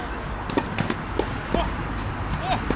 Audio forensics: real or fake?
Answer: real